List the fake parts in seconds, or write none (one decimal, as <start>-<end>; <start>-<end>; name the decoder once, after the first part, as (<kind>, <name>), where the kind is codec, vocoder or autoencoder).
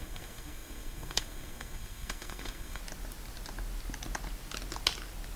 0.0-2.8 (codec, SNAC)